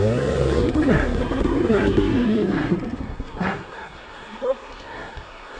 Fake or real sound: fake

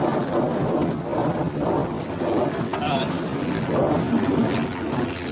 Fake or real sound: real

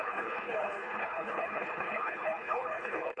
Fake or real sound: fake